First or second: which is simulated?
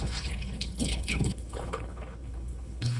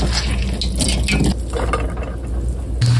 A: first